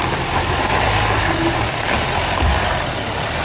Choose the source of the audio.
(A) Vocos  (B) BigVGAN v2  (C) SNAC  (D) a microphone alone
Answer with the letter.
B